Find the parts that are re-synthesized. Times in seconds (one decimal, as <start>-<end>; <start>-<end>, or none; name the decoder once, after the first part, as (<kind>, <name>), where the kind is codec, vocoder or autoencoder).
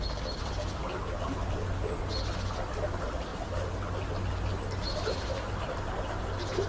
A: 3.3-3.9 (vocoder, BigVGAN v2); 5.2-6.7